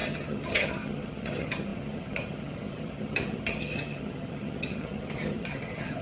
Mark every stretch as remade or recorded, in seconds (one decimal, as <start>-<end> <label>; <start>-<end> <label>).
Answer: 0.0-6.0 remade